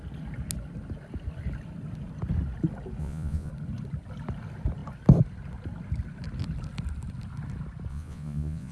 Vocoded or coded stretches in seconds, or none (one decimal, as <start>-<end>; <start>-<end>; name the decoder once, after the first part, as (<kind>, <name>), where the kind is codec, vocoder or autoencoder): 3.0-3.5 (vocoder, Vocos); 7.9-8.7